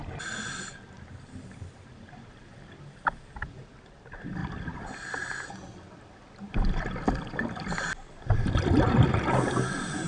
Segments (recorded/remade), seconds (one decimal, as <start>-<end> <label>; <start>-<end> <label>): 0.0-10.1 recorded